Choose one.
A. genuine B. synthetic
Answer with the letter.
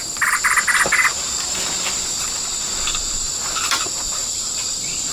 B